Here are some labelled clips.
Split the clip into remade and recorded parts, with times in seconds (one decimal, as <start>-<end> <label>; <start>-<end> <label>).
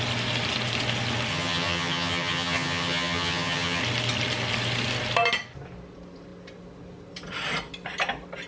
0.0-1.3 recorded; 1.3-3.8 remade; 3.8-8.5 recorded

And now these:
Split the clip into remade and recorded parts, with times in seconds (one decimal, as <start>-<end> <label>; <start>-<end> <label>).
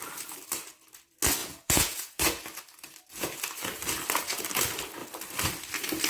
0.0-1.4 recorded; 1.4-2.2 remade; 2.2-6.1 recorded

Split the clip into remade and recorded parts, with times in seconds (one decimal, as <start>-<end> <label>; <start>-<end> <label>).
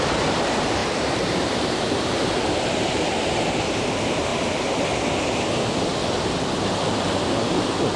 0.0-4.3 remade; 4.3-6.6 recorded; 6.6-8.0 remade